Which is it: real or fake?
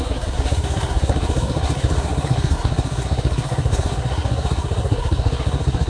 fake